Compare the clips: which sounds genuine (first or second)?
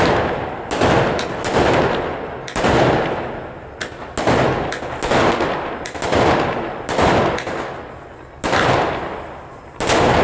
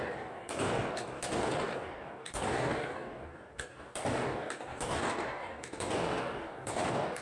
first